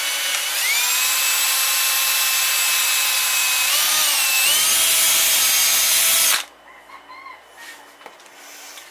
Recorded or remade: recorded